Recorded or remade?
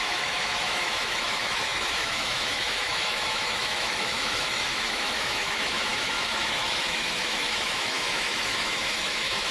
remade